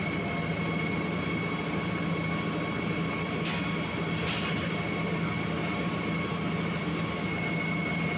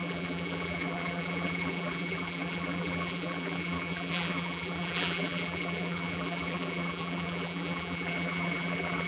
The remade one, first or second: second